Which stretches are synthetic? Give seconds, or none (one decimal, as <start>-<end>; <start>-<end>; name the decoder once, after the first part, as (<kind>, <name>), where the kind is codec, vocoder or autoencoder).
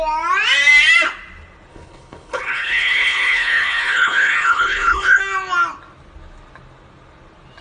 1.7-5.2 (codec, HILCodec)